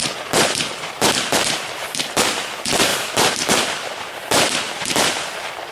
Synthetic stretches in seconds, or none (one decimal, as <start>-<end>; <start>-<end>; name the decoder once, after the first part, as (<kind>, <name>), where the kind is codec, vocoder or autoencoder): 2.9-5.3 (vocoder, BigVGAN v2)